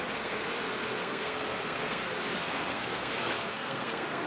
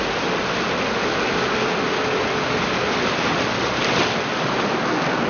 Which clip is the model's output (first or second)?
first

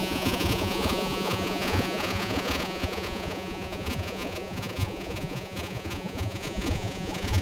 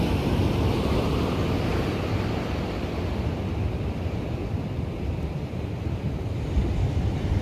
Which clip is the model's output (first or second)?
first